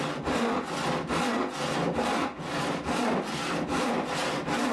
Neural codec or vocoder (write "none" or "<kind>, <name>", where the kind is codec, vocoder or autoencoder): none